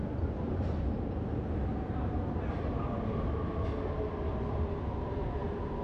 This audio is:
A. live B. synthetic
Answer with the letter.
A